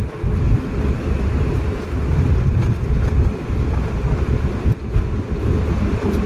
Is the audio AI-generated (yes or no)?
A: no